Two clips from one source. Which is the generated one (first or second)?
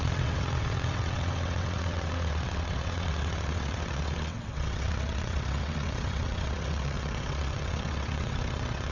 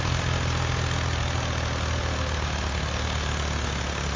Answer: first